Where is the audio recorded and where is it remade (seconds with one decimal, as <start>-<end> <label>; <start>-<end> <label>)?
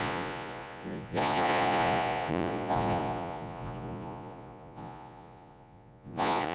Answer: 0.0-6.5 remade